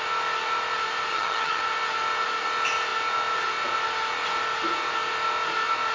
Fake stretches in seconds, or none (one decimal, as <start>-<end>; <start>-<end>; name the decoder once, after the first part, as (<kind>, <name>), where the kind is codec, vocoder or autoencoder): 1.1-1.6 (vocoder, HiFi-GAN)